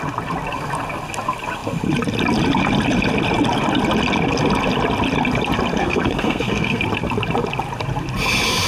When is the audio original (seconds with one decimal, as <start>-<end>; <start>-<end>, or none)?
0.0-5.8; 6.8-8.7